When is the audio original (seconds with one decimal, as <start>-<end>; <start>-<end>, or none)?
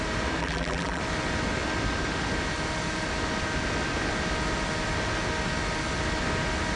0.0-0.4; 1.0-6.8